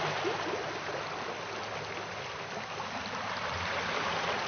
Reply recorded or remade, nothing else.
recorded